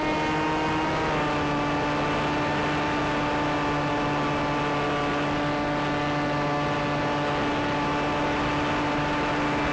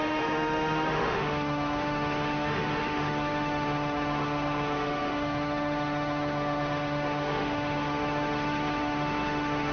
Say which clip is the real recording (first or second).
first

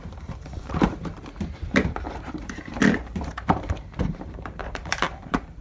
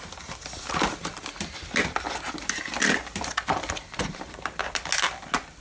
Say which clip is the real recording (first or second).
second